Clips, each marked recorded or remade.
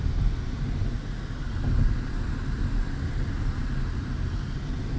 recorded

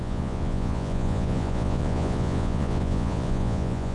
remade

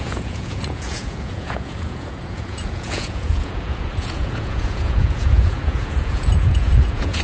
remade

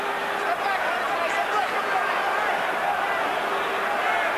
recorded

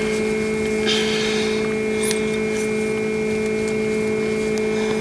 recorded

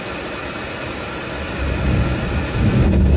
recorded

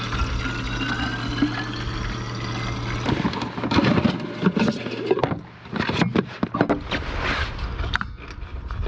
recorded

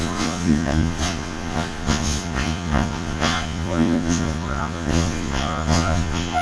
remade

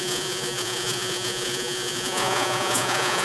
remade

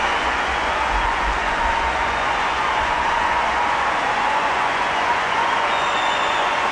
remade